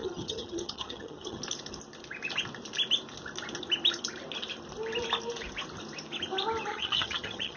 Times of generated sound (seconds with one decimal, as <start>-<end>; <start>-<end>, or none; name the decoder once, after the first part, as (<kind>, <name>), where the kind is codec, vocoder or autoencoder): 0.0-1.4 (vocoder, HiFi-GAN); 6.7-7.6